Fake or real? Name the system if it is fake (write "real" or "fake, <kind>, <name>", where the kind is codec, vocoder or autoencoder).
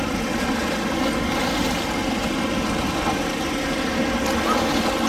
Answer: real